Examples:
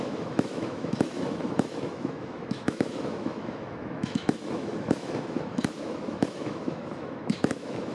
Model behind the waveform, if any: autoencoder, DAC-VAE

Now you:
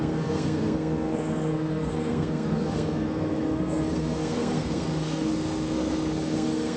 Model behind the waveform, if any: codec, SNAC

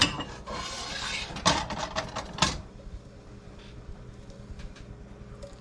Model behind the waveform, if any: none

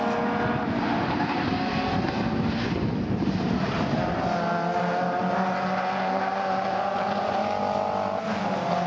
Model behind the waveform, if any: none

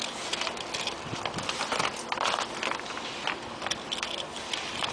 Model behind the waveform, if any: none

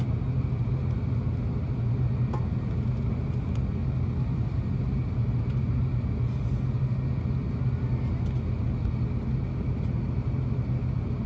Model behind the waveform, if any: none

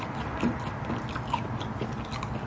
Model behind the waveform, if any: none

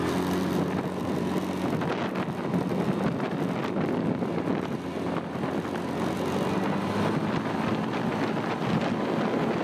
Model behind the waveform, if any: none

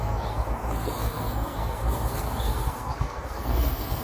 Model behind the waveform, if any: codec, SNAC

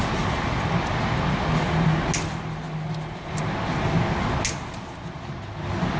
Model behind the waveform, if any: none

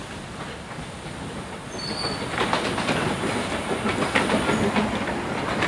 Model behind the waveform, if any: none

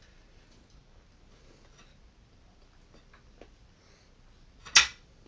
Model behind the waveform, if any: none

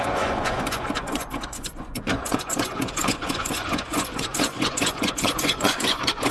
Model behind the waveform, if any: vocoder, Vocos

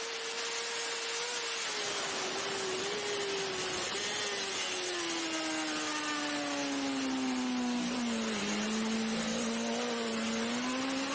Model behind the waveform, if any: none